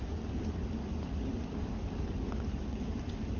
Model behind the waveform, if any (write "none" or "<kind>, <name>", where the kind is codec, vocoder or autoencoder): none